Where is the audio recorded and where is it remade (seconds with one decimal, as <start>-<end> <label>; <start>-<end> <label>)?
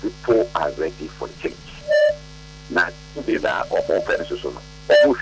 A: 0.0-1.3 recorded; 1.3-2.1 remade; 2.1-3.3 recorded; 3.3-4.2 remade; 4.2-5.2 recorded